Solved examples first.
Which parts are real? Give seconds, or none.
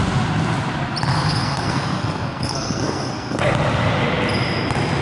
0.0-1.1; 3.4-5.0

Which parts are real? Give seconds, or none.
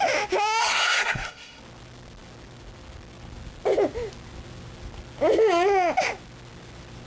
0.0-0.6; 1.6-7.1